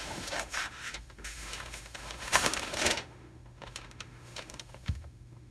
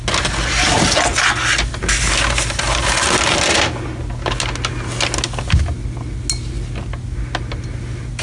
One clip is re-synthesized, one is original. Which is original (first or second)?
second